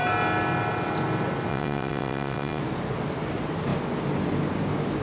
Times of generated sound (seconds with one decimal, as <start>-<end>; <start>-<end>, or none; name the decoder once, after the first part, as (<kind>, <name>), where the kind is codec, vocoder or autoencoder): 1.5-2.6 (vocoder, WaveNeXt)